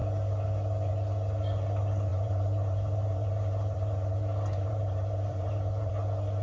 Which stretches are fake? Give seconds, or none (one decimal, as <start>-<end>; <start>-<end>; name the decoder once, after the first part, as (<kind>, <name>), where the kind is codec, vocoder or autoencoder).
2.1-5.9 (vocoder, BigVGAN v2)